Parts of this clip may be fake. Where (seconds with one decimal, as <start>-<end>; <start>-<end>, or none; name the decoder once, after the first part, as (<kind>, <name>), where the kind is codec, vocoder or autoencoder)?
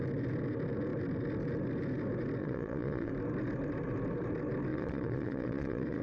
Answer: 2.4-3.1 (vocoder, Vocos); 4.7-6.0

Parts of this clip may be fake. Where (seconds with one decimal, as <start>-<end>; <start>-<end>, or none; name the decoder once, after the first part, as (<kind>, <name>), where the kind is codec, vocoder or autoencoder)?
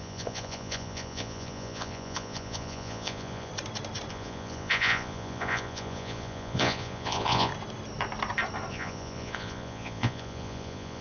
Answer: 0.0-3.5 (vocoder, Vocos); 4.1-7.5; 8.7-11.0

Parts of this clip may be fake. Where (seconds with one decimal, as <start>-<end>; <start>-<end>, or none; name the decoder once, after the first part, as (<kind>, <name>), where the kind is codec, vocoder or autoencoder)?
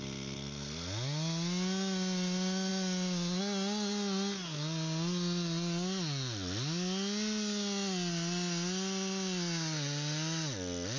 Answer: none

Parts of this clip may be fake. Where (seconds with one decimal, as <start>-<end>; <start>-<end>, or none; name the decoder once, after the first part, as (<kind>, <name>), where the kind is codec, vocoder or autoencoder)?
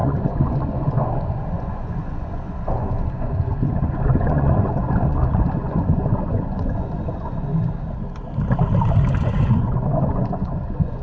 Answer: 0.0-7.5 (vocoder, Vocos); 9.2-11.0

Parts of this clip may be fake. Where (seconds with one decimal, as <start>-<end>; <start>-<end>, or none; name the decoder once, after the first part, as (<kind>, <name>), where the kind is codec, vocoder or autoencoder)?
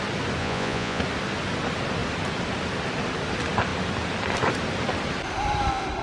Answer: 0.4-1.0 (vocoder, Vocos)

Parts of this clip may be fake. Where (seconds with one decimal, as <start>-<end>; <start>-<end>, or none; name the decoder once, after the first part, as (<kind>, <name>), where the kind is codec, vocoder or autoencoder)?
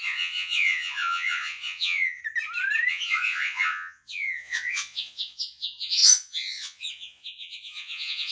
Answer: 0.0-2.2 (vocoder, Vocos); 2.9-8.3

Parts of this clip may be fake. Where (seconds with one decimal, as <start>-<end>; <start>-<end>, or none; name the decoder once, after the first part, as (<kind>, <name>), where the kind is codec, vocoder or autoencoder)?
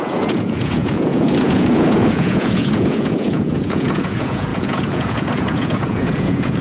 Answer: 0.0-6.6 (vocoder, Vocos)